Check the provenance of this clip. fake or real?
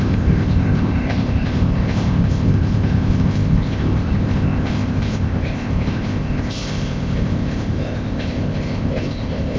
fake